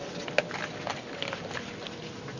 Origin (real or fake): real